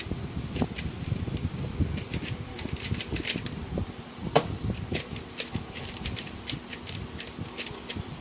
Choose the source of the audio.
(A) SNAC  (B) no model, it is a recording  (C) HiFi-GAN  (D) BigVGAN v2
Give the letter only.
D